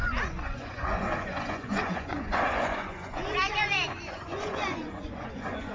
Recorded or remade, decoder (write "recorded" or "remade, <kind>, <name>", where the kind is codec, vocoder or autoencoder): remade, vocoder, Vocos